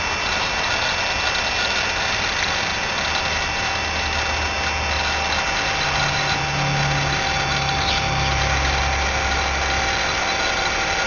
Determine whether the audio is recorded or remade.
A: recorded